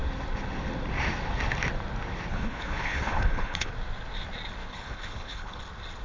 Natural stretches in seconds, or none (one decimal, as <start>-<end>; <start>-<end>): 0.0-2.3; 3.7-4.6; 5.6-6.0